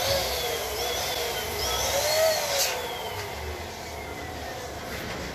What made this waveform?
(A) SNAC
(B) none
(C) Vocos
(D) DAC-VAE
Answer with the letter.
B